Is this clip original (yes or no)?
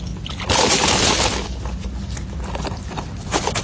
yes